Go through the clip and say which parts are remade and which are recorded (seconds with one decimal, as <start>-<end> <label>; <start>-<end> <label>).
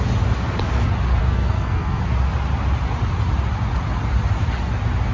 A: 0.0-1.2 recorded; 1.2-2.0 remade; 2.0-5.1 recorded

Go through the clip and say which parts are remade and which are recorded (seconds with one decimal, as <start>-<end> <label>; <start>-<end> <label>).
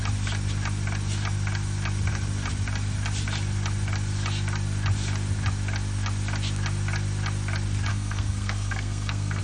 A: 0.0-7.9 recorded; 7.9-9.4 remade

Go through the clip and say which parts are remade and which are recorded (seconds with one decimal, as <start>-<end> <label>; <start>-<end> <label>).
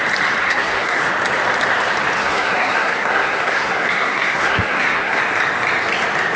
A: 0.0-0.4 recorded; 0.4-1.0 remade; 1.0-2.2 recorded; 2.2-5.2 remade; 5.2-6.4 recorded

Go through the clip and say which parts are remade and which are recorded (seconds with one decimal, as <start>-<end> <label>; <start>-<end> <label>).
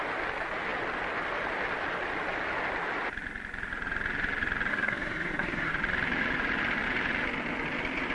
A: 0.0-4.7 recorded; 4.7-5.7 remade; 5.7-8.1 recorded